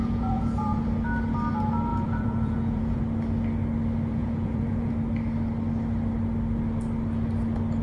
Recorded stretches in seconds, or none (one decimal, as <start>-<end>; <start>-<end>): 0.8-1.9; 3.0-4.1; 4.9-7.8